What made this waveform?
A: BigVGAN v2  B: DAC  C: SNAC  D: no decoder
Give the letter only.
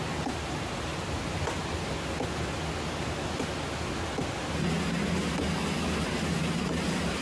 D